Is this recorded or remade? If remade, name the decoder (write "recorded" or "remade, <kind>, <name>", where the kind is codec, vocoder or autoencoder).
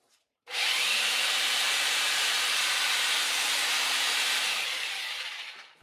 remade, vocoder, BigVGAN v2